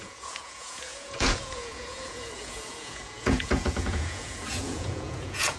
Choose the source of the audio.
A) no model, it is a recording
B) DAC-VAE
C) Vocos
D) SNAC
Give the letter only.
C